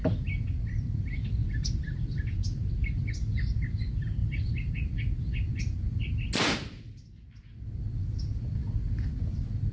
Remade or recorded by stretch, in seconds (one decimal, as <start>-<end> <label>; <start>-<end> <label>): 0.0-1.4 recorded; 1.4-2.2 remade; 2.2-4.2 recorded; 4.2-4.7 remade; 4.7-9.7 recorded

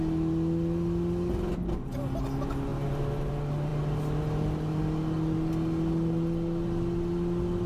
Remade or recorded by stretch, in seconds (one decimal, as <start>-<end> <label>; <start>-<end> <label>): 0.0-7.7 recorded

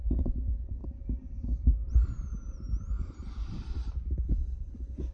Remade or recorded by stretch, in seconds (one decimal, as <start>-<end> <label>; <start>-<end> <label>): 0.0-0.8 recorded; 0.8-3.9 remade; 3.9-5.1 recorded

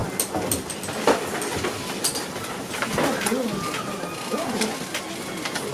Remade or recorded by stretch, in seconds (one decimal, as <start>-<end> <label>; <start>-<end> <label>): 0.0-5.7 recorded